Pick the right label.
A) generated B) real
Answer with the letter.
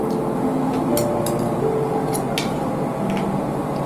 B